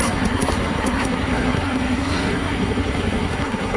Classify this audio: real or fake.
fake